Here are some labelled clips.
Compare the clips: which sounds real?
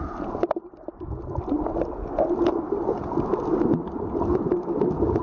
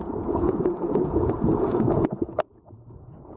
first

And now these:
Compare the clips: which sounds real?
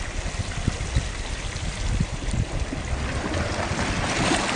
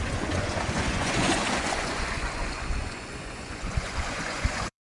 first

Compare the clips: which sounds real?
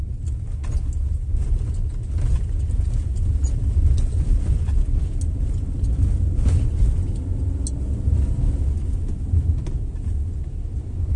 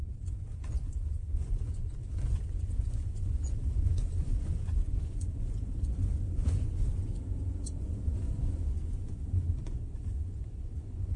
first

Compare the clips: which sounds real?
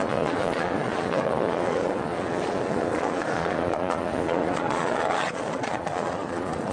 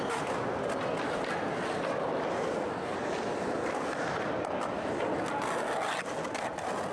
second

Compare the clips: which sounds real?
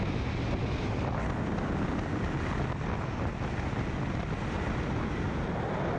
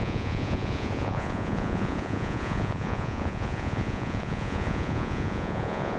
first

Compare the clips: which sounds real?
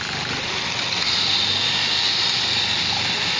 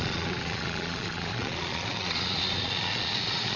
first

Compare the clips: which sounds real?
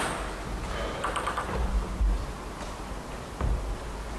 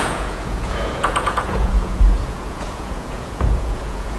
first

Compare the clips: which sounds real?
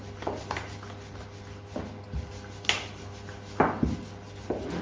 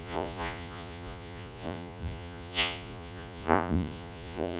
first